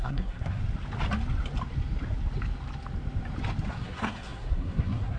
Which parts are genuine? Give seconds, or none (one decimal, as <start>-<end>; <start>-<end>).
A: 0.6-3.7